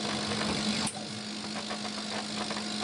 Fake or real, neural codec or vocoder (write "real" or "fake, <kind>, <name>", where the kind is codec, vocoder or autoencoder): real